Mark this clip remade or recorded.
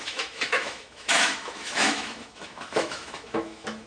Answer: remade